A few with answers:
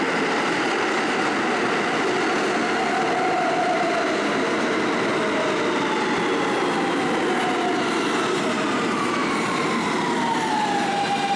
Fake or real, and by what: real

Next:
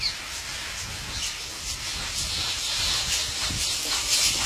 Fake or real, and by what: real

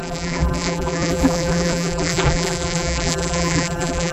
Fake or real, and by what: fake, vocoder, BigVGAN v2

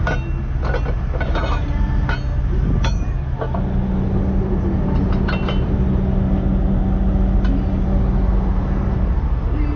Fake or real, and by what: real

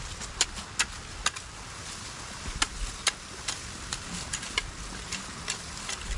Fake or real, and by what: real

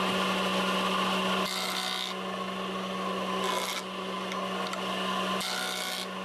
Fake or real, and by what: real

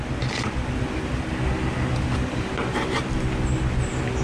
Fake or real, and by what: real